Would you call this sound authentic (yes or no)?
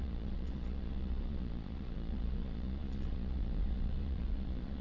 no